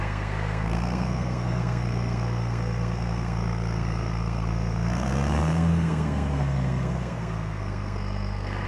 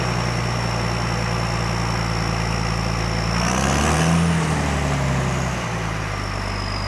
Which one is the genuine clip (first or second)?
second